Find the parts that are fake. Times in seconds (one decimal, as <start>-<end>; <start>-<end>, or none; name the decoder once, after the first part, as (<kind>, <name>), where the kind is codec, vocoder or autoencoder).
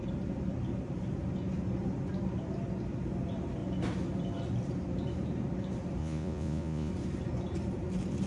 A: 6.0-6.9 (vocoder, Vocos)